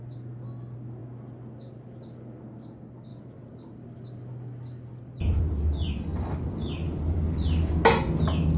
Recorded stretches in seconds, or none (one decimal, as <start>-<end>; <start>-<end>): 0.0-3.1; 5.4-6.1; 7.8-8.6